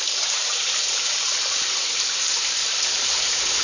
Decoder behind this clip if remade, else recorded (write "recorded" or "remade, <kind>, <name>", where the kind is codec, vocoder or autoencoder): remade, vocoder, BigVGAN v2